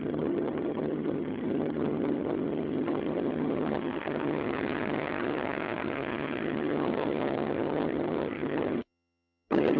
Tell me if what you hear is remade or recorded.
remade